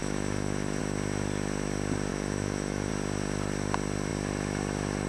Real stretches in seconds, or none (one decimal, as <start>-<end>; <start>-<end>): 0.8-2.1; 2.9-5.1